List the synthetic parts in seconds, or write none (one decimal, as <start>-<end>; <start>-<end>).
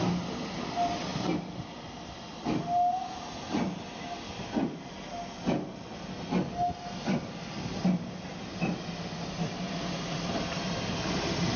none